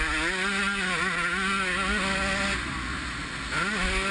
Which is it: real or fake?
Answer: real